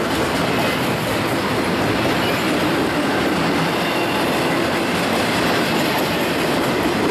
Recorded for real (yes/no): yes